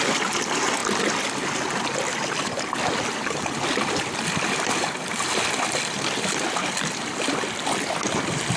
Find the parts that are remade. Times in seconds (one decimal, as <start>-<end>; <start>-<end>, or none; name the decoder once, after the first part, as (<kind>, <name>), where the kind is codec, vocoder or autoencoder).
none